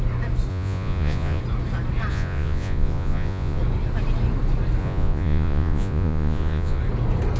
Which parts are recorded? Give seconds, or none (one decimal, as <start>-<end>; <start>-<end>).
0.0-0.5; 1.4-2.1; 3.6-4.8; 6.8-7.4